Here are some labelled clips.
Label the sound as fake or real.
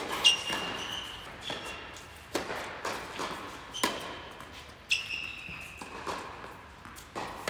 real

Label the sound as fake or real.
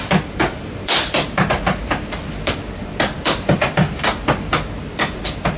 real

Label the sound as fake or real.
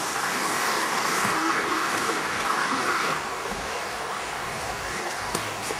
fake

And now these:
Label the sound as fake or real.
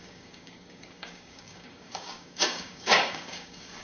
fake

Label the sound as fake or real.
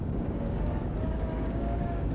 fake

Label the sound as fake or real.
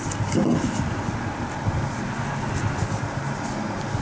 real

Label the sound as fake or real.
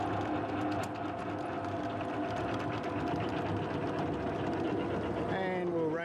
real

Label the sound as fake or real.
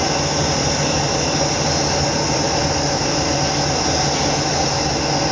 real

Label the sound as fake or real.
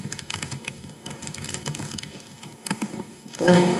fake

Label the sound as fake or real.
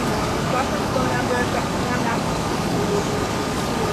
fake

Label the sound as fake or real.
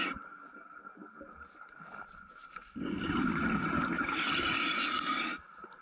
real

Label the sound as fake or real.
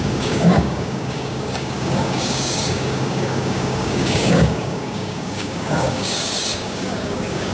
fake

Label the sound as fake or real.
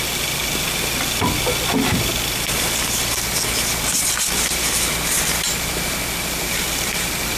real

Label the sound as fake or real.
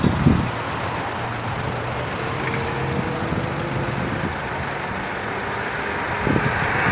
real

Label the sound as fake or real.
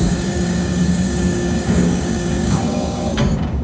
fake